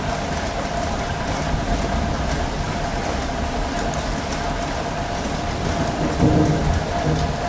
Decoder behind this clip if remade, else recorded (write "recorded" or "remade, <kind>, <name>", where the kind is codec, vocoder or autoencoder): recorded